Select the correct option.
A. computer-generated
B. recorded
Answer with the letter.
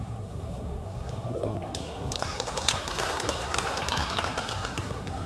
A